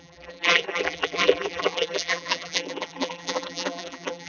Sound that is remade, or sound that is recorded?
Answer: remade